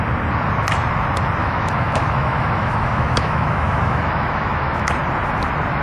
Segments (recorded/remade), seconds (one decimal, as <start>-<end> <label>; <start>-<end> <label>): 0.0-1.4 recorded; 1.4-4.9 remade; 4.9-5.8 recorded